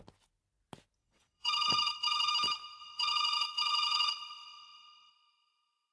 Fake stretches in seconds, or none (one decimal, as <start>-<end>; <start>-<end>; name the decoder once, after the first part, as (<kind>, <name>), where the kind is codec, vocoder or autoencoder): 1.0-2.3 (vocoder, WaveNeXt); 2.8-5.1